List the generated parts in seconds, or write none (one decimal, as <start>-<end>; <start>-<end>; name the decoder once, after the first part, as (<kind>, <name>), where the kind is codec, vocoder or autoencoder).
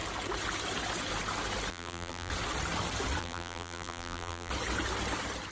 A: 1.7-2.3 (vocoder, BigVGAN v2); 3.2-4.5